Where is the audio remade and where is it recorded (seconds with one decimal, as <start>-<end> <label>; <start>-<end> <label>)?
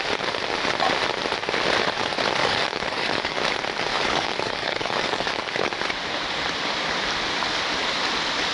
0.0-2.4 recorded; 2.4-3.4 remade; 3.4-3.9 recorded; 3.9-5.7 remade; 5.7-8.5 recorded